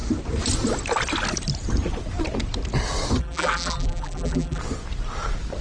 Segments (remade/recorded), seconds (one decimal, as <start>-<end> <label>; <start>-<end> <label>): 0.0-3.2 recorded; 3.2-4.6 remade; 4.6-5.6 recorded